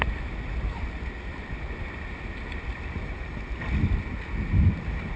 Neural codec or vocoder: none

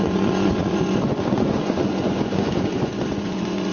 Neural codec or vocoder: vocoder, Vocos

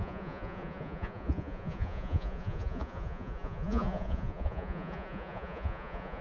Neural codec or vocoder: vocoder, Vocos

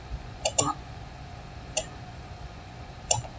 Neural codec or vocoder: vocoder, Vocos